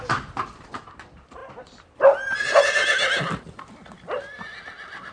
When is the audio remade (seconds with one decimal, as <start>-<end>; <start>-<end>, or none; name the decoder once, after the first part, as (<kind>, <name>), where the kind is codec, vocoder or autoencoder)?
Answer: none